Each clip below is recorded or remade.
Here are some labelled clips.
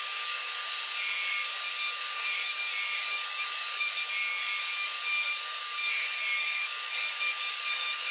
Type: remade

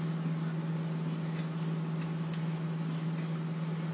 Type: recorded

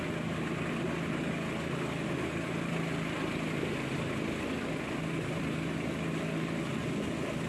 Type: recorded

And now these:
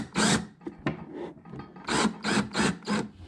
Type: recorded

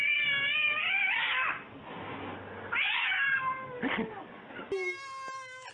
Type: recorded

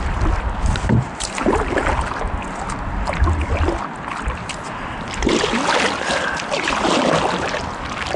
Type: recorded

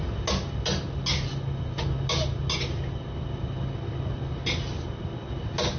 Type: recorded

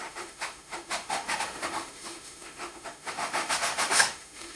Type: remade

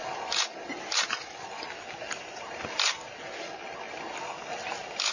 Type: recorded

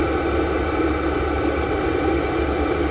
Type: recorded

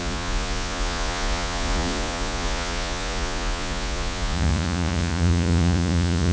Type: remade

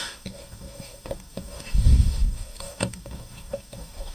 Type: remade